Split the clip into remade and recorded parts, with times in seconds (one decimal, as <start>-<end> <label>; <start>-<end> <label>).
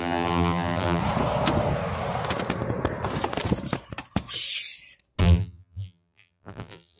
0.0-1.0 remade; 1.0-5.2 recorded; 5.2-7.0 remade